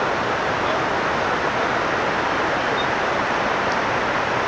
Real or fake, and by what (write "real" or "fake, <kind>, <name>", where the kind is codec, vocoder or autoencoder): real